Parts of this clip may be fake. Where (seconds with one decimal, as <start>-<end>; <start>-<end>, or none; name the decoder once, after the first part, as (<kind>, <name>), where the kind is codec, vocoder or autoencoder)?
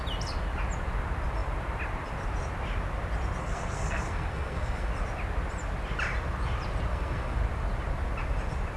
3.4-4.9 (codec, SNAC); 6.9-7.4